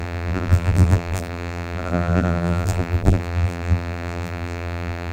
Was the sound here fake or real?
fake